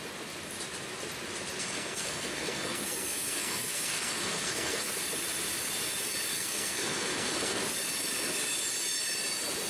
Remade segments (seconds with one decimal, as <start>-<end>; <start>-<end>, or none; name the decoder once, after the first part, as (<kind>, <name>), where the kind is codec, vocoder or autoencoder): 1.6-4.9 (codec, SNAC); 6.3-7.6